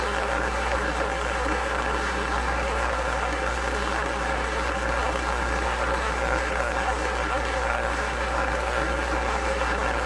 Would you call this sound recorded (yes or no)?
no